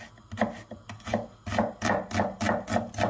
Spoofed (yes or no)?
no